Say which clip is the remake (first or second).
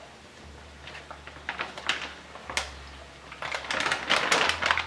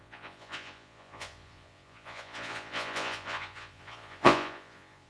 second